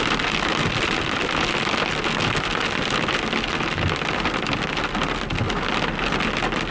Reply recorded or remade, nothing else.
recorded